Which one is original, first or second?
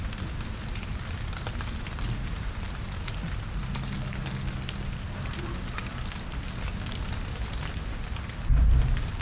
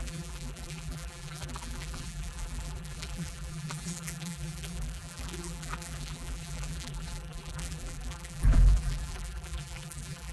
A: first